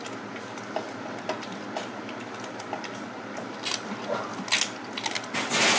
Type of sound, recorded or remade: recorded